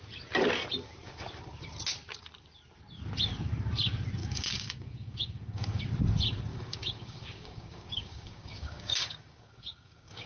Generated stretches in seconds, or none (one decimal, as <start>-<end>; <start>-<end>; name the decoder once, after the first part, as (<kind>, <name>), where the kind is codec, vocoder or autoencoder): 4.2-5.8 (codec, DAC); 6.5-10.3